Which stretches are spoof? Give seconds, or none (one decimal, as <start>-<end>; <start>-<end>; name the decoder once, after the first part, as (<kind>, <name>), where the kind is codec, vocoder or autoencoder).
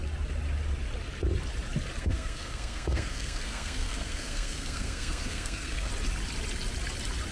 2.0-5.9 (codec, SNAC)